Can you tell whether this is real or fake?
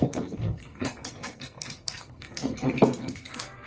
fake